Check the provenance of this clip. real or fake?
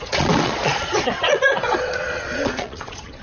fake